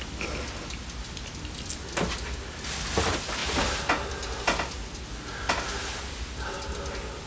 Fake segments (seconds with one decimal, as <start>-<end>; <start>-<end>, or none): none